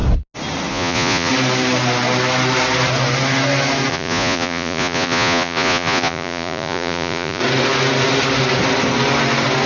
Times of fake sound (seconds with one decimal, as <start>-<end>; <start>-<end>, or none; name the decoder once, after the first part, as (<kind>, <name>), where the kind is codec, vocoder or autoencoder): 0.7-1.3 (vocoder, Vocos); 3.9-7.4